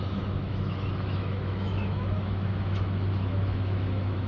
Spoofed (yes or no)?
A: yes